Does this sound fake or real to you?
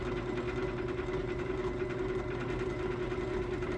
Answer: real